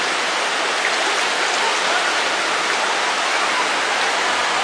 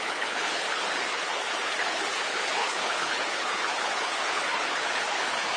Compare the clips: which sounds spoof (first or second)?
second